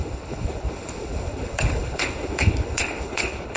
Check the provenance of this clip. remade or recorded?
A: remade